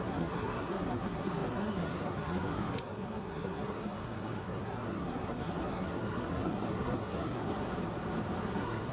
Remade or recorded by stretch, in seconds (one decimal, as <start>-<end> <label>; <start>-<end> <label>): 0.0-7.7 remade; 7.7-8.4 recorded; 8.4-8.9 remade